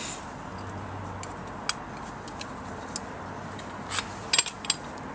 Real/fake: real